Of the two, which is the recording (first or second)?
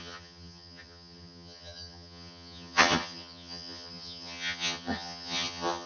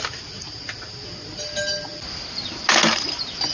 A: second